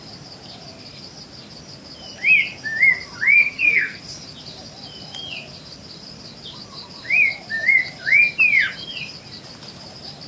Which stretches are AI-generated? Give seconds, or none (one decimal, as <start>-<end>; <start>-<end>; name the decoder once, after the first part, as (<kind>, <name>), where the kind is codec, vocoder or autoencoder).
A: 3.4-4.0 (codec, SNAC)

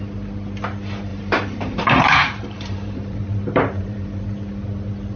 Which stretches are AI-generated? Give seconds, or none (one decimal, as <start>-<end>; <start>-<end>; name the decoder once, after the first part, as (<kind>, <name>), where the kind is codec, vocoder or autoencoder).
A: 1.1-4.2 (vocoder, BigVGAN v2)

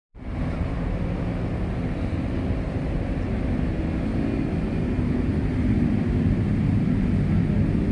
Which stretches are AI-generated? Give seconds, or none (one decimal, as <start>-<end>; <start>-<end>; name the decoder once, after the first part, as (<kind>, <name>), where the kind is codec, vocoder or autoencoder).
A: 0.0-0.5 (vocoder, BigVGAN v2)

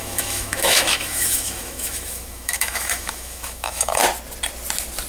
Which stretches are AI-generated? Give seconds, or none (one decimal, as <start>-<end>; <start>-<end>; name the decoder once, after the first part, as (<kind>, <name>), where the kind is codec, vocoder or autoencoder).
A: 0.0-4.0 (autoencoder, DAC-VAE)

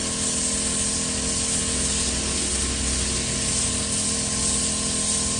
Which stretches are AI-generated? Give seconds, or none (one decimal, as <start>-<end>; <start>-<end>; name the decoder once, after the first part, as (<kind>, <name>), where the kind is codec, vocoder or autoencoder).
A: none